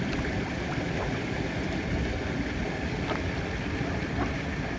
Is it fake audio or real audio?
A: real